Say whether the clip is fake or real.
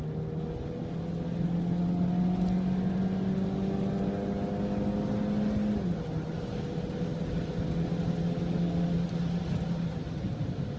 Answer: real